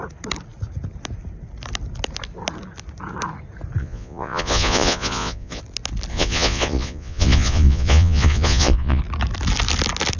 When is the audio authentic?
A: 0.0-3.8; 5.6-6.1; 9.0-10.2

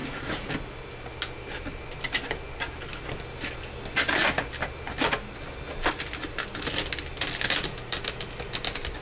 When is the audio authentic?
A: 0.0-9.0

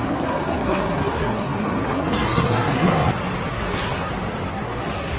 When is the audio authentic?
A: 3.1-3.5; 4.1-4.5

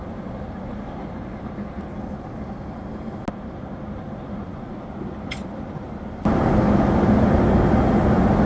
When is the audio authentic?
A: 0.0-8.5

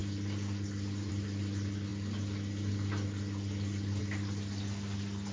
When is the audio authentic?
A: 0.0-5.3

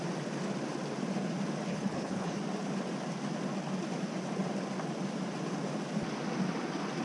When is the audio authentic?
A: 0.0-1.7; 2.4-7.0

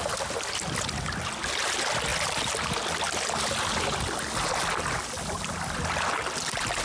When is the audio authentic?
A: 0.0-6.8

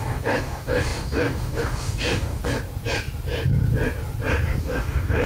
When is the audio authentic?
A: 2.4-4.6